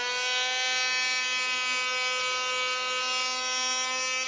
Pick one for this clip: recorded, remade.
recorded